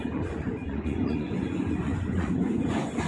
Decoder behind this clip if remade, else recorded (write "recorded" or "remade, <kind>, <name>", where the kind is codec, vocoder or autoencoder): remade, vocoder, Vocos